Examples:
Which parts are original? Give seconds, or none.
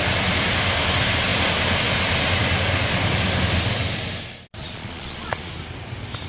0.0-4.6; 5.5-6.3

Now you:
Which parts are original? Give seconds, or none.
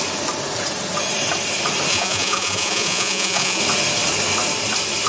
0.0-1.9; 3.6-5.1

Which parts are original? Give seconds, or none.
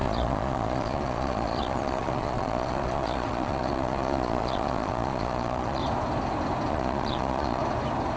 5.8-6.7; 7.6-8.2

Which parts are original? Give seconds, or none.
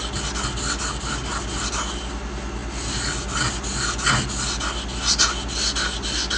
0.0-6.4